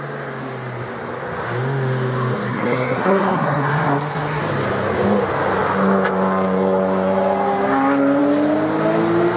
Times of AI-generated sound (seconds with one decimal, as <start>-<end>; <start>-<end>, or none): 2.5-4.4